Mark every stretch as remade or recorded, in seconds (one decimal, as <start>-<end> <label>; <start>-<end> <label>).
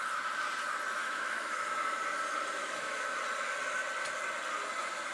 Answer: 0.0-1.0 recorded; 1.0-1.7 remade; 1.7-2.6 recorded; 2.6-3.2 remade; 3.2-5.1 recorded